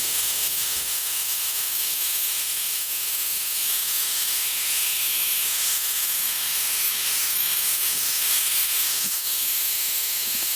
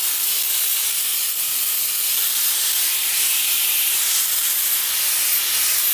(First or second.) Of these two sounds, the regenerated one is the first